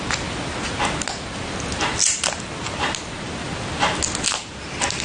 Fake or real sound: real